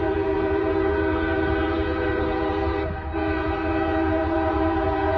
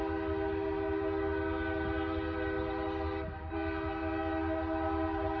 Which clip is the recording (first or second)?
second